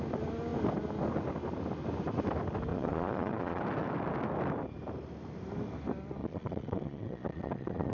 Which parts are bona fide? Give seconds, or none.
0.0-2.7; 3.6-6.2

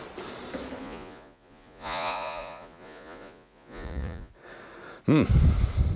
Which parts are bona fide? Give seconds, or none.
0.0-0.8; 4.3-6.0